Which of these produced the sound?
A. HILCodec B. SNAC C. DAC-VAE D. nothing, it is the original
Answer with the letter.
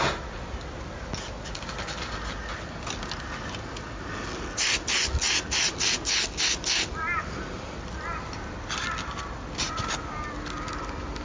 D